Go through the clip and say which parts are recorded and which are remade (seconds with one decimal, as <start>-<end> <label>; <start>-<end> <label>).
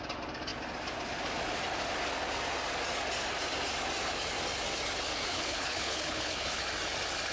0.0-5.3 recorded; 5.3-6.6 remade; 6.6-7.3 recorded